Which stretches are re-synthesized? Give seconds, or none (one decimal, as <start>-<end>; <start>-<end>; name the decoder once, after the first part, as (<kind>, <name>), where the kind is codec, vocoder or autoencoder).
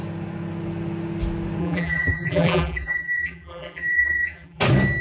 1.6-4.6 (vocoder, BigVGAN v2)